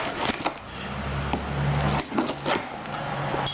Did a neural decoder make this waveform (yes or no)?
no